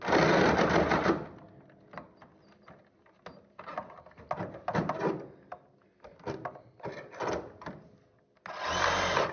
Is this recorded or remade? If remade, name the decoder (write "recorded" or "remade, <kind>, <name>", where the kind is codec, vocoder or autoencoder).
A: recorded